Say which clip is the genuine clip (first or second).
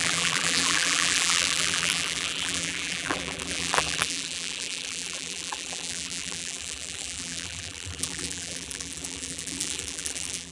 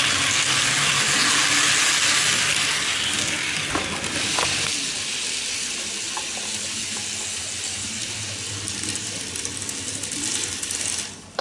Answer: second